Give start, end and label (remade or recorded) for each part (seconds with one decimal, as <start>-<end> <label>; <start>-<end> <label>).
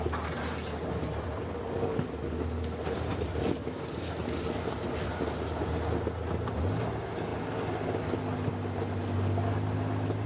0.0-10.3 recorded